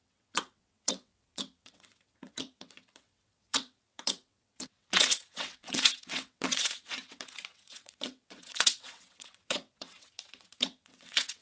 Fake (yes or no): yes